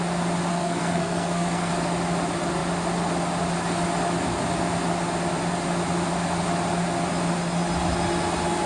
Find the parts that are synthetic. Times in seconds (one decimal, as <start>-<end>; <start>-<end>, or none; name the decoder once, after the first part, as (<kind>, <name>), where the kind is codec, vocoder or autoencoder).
0.5-1.7 (codec, SNAC)